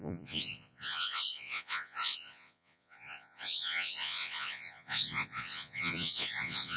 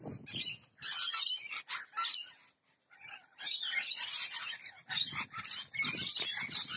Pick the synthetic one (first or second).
first